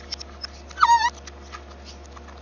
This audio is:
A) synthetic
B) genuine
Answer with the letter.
B